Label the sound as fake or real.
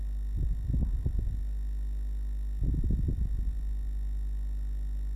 real